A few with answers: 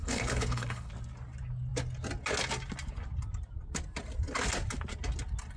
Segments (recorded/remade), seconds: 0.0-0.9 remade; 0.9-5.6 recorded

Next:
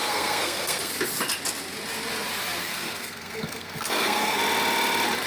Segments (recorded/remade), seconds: 0.0-0.9 remade; 0.9-2.6 recorded; 2.6-4.4 remade; 4.4-5.3 recorded

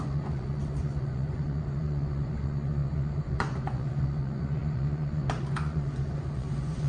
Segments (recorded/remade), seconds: 0.0-6.9 remade